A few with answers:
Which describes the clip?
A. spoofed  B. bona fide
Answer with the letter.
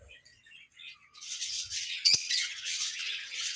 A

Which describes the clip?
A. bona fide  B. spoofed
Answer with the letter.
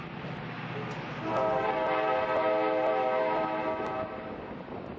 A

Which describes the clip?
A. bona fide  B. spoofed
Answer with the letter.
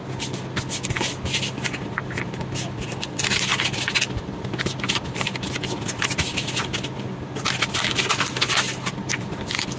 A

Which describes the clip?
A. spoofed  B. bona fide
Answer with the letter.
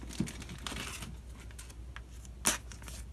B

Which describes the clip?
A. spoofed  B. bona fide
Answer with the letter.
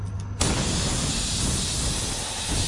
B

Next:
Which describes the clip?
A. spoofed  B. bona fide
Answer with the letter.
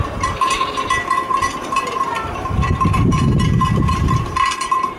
A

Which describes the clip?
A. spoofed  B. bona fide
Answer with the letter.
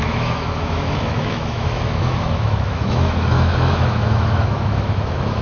A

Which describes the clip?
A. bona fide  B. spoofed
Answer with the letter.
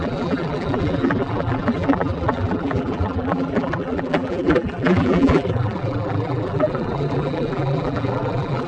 B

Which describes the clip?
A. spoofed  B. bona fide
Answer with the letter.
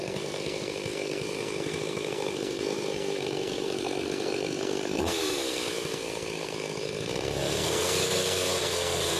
A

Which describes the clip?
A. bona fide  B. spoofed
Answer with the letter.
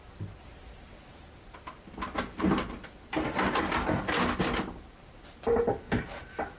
A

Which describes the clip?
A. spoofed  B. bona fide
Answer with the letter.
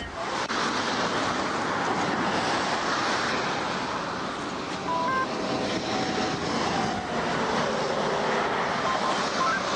B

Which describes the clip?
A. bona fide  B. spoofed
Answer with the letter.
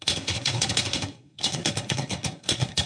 B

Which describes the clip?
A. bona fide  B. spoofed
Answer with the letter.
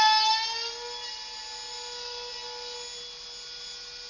A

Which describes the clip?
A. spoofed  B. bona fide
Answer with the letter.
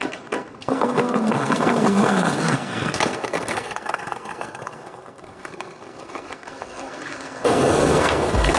A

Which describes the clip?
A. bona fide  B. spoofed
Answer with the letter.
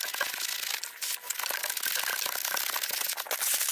A